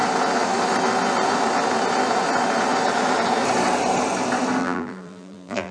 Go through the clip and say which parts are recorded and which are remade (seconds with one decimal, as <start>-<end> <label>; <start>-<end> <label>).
0.0-4.6 recorded; 4.6-5.7 remade